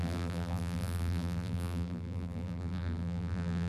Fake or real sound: fake